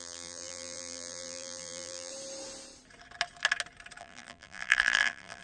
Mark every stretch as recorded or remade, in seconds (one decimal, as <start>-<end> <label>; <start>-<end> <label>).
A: 0.0-2.1 remade; 2.1-4.0 recorded; 4.0-5.4 remade